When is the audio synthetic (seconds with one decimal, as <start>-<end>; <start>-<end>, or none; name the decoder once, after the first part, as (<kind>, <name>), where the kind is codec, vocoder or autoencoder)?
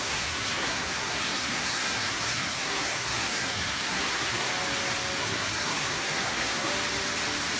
0.0-4.5 (codec, SNAC); 5.2-6.7